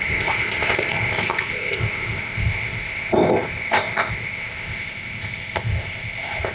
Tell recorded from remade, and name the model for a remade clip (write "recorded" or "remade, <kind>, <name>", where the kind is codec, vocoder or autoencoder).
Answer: remade, codec, ZipCodec